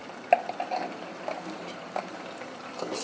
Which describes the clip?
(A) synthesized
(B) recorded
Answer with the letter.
B